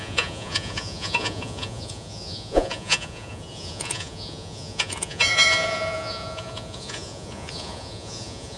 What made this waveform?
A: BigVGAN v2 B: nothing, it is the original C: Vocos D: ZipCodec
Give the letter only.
C